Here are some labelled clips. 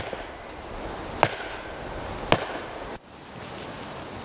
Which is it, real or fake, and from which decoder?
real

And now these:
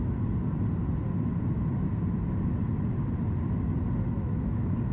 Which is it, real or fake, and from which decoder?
real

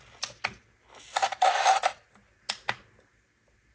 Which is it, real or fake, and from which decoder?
real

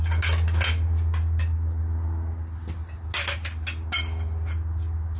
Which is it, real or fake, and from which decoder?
real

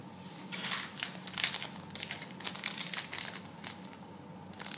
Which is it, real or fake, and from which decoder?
real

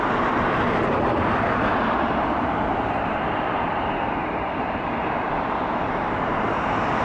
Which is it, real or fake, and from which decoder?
fake, vocoder, BigVGAN v2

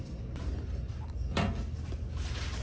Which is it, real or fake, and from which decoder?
real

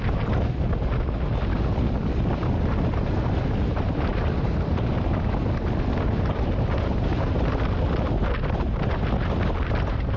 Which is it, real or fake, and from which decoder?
real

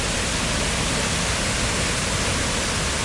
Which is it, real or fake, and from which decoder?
real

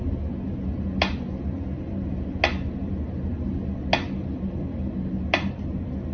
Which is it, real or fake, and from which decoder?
real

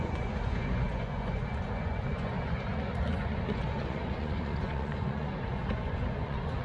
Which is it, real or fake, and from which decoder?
fake, vocoder, Vocos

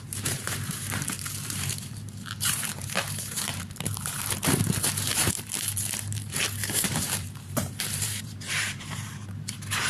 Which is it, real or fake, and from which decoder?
fake, vocoder, BigVGAN v2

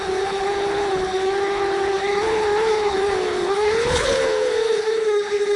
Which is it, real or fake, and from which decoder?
fake, codec, HILCodec